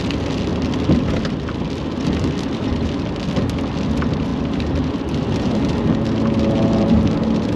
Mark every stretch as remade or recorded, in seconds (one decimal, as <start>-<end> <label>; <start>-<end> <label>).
0.0-4.3 recorded; 4.3-5.7 remade; 5.7-7.6 recorded